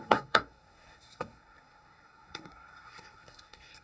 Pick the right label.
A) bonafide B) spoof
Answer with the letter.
B